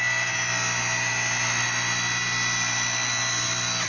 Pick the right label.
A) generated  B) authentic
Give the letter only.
B